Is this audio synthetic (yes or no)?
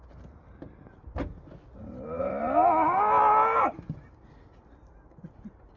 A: no